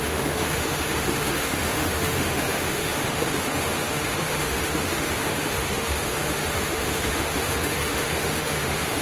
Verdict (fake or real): fake